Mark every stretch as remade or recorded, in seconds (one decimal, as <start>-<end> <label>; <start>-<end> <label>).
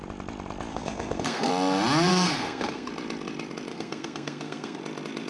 0.0-0.7 recorded; 0.7-1.5 remade; 1.5-2.1 recorded; 2.1-2.9 remade; 2.9-3.7 recorded; 3.7-4.8 remade; 4.8-5.3 recorded